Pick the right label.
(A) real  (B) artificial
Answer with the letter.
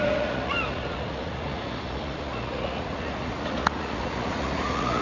B